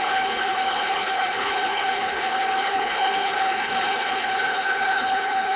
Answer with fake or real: fake